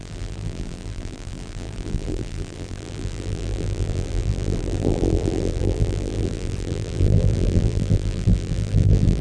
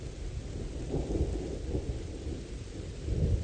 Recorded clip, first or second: second